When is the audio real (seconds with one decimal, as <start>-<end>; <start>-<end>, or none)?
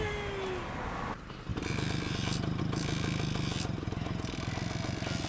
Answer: 0.0-5.3